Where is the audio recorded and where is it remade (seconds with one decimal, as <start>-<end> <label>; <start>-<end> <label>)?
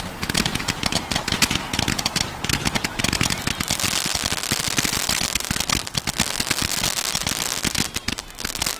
0.0-8.8 recorded